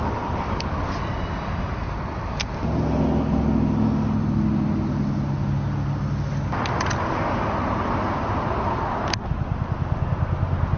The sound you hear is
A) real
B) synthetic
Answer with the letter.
A